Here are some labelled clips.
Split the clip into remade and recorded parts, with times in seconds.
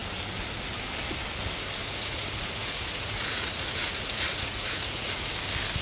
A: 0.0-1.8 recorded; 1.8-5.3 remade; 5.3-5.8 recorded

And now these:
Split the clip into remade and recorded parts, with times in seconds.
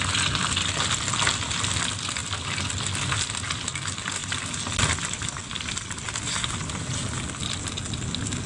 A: 0.0-8.5 recorded